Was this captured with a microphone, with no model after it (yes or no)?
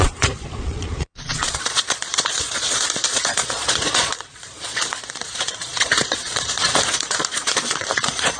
no